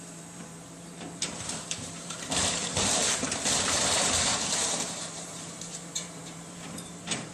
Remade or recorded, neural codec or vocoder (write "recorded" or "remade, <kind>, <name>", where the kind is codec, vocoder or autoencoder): remade, vocoder, BigVGAN v2